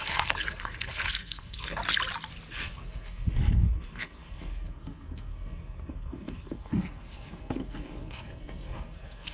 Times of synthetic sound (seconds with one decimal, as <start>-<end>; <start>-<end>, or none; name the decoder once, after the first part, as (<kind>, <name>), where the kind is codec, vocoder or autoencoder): 0.0-1.8 (codec, SNAC); 2.5-9.3